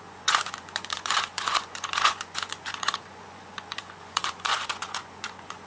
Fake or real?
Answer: fake